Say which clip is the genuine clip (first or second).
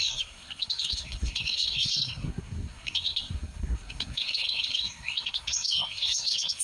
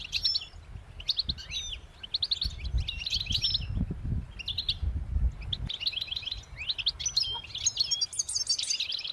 second